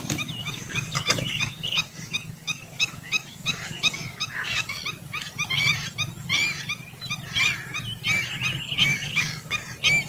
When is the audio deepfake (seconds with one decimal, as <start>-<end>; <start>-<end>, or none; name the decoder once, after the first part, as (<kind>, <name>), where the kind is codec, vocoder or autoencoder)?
0.4-4.8 (codec, DAC); 8.8-9.6